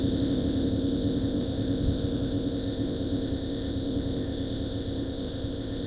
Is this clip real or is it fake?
fake